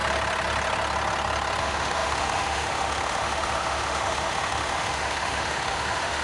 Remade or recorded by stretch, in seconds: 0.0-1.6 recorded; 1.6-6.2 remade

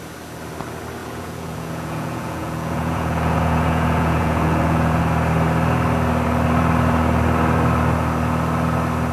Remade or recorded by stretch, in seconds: 0.0-1.0 recorded; 1.0-5.0 remade; 5.0-9.1 recorded

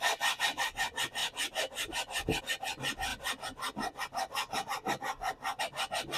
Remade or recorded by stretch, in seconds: 0.0-6.2 recorded

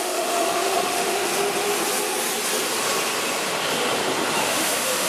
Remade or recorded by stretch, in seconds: 0.0-1.3 remade; 1.3-4.4 recorded; 4.4-5.1 remade

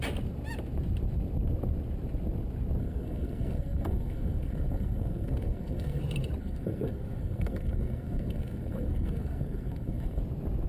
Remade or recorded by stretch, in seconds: 0.0-2.8 recorded; 2.8-6.0 remade; 6.0-6.4 recorded; 6.4-10.2 remade; 10.2-10.7 recorded

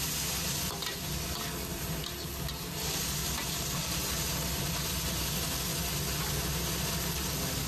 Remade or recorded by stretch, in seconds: 0.0-1.7 recorded; 1.7-2.4 remade; 2.4-3.2 recorded; 3.2-4.2 remade; 4.2-7.7 recorded

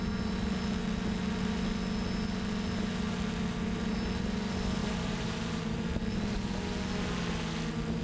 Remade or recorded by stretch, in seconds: 0.0-4.8 recorded; 4.8-5.8 remade; 5.8-8.0 recorded

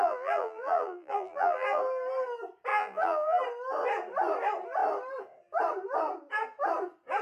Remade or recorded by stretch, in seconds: 0.0-1.8 remade; 1.8-2.7 recorded; 2.7-3.4 remade; 3.4-7.2 recorded